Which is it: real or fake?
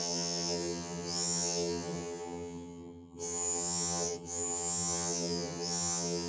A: fake